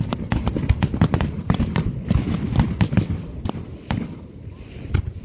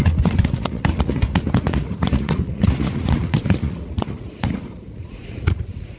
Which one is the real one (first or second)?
first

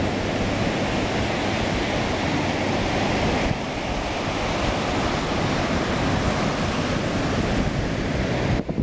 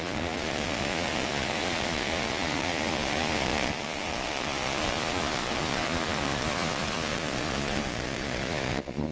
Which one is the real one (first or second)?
first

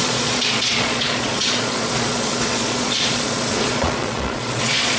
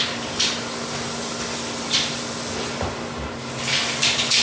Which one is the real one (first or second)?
second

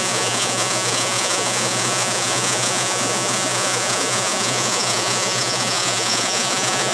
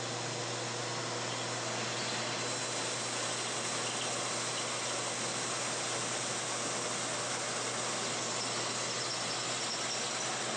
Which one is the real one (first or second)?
second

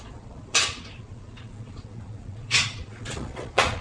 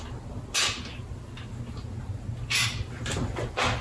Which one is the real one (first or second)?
second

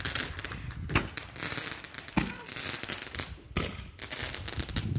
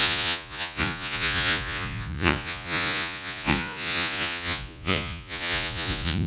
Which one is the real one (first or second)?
first